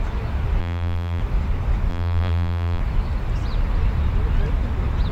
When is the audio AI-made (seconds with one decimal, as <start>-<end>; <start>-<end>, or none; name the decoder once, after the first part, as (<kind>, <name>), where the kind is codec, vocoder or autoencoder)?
0.6-1.2 (vocoder, BigVGAN v2); 1.9-2.8